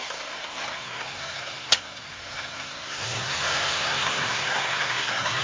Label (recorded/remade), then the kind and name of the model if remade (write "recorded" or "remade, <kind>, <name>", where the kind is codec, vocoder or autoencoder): remade, codec, SNAC